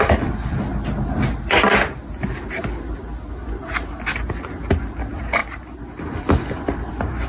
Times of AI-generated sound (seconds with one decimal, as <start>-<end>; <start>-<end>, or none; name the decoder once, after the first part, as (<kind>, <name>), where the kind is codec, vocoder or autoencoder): 0.0-0.7 (vocoder, BigVGAN v2); 5.0-5.4; 6.0-7.3